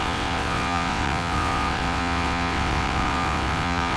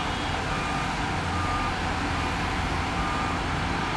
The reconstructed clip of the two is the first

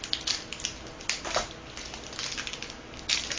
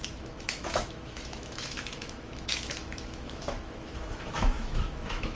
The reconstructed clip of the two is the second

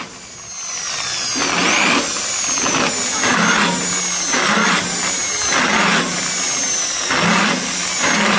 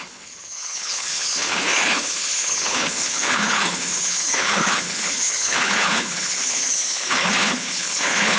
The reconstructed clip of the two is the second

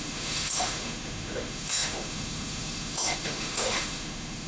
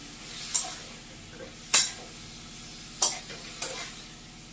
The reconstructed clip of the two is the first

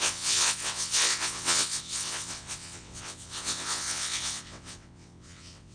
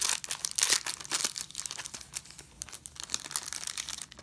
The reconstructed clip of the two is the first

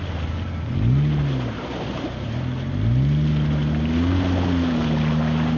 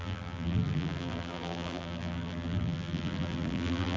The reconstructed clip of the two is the second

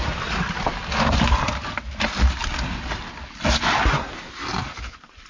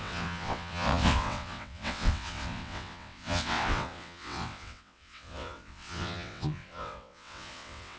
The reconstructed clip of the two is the second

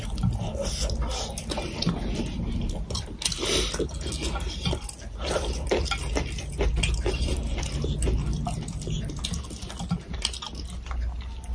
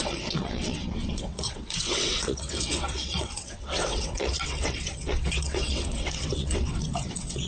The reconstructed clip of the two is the second